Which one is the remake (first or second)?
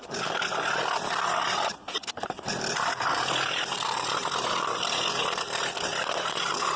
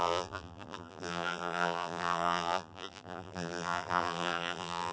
second